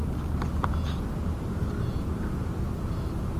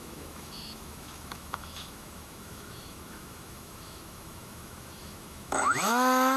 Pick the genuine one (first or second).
first